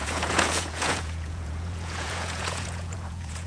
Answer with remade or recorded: remade